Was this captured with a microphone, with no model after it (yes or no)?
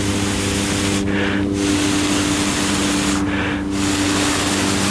yes